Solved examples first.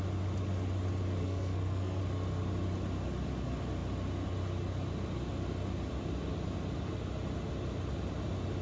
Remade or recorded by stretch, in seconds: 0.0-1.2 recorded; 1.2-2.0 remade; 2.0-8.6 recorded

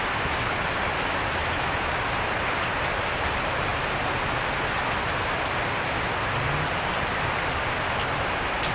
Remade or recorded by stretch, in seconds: 0.0-1.4 recorded; 1.4-1.9 remade; 1.9-8.7 recorded

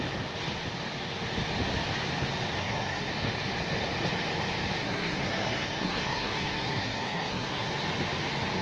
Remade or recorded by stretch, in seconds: 0.0-2.6 recorded; 2.6-3.1 remade; 3.1-4.8 recorded; 4.8-7.7 remade; 7.7-8.6 recorded